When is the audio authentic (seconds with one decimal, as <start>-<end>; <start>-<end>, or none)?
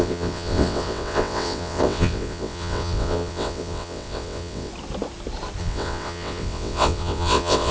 4.7-5.6